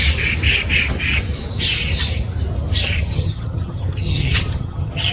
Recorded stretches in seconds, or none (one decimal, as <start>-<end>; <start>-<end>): 0.0-3.1